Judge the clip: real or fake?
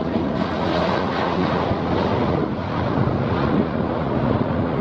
fake